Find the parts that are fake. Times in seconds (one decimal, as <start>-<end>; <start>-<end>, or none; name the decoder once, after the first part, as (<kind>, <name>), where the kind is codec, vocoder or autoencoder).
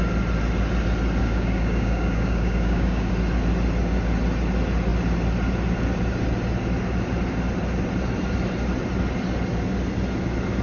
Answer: 1.2-3.1 (codec, DAC)